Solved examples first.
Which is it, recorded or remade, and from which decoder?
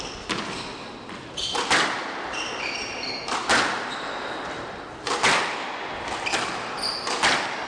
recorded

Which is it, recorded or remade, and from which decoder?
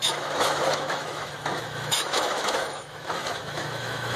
remade, autoencoder, DAC-VAE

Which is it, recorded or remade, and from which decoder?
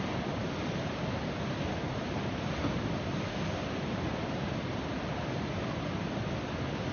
recorded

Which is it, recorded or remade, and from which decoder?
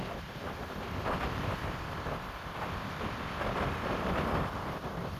recorded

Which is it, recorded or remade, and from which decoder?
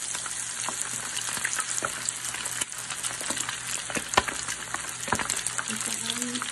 recorded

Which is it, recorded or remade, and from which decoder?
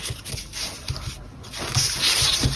recorded